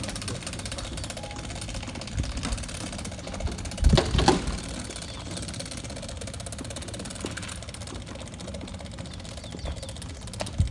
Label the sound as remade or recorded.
recorded